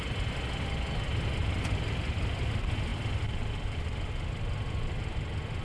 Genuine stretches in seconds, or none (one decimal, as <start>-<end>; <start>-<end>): 0.0-1.4; 2.3-5.6